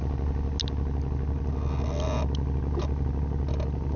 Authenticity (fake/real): real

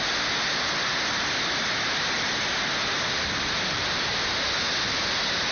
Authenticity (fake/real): real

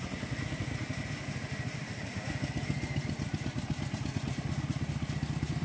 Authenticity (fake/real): real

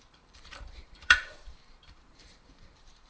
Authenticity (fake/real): fake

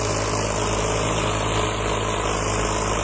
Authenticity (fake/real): real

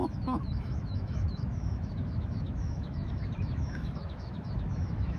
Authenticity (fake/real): fake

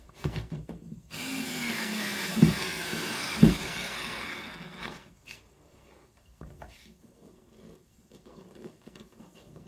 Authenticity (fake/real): fake